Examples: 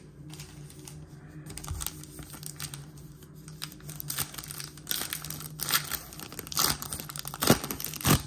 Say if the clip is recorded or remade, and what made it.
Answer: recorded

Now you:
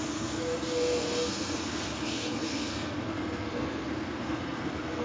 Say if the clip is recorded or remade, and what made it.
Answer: remade, codec, SNAC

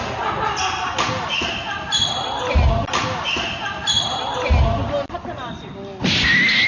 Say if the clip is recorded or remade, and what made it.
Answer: recorded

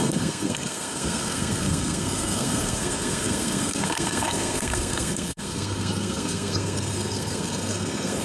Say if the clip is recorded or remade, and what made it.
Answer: remade, codec, SNAC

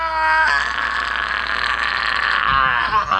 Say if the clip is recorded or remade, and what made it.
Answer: recorded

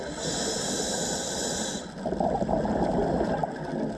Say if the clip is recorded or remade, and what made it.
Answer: recorded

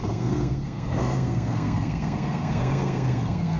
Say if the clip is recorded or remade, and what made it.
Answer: remade, codec, SNAC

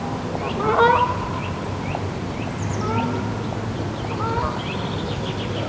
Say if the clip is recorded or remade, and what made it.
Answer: recorded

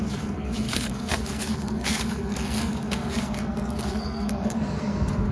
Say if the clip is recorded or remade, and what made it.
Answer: remade, codec, SNAC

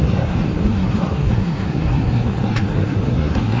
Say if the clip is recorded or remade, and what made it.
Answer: remade, codec, SNAC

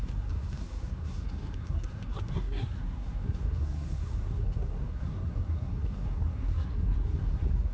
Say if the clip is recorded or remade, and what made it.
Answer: remade, codec, SNAC